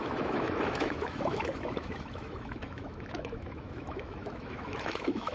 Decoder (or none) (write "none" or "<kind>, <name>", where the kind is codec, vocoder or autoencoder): autoencoder, DAC-VAE